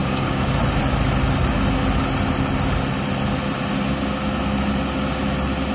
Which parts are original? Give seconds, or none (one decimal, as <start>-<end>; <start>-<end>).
0.5-5.7